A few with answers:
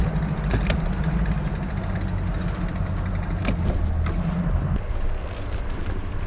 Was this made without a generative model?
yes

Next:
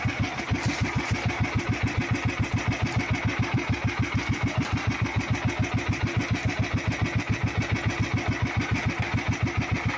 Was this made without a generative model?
yes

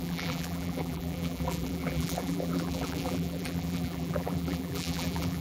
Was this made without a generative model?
no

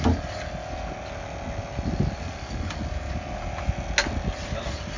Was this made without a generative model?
yes